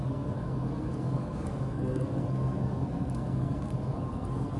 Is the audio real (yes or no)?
no